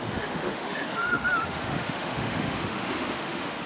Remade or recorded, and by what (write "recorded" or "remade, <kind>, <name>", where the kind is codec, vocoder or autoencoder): remade, autoencoder, DAC-VAE